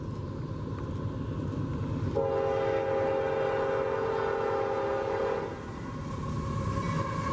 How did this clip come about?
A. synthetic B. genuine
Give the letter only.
B